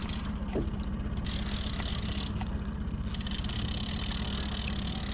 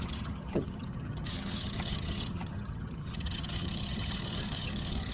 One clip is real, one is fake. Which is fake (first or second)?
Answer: second